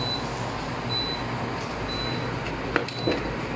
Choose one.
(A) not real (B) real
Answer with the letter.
B